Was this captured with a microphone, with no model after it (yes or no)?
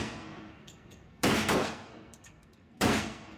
no